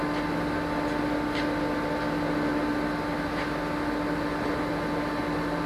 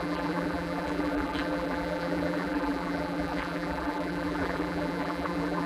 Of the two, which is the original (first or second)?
first